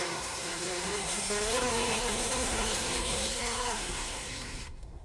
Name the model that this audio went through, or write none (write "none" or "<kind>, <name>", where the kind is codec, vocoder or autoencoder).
codec, SNAC